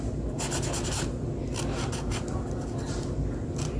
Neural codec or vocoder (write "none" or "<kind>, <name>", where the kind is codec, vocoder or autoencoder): none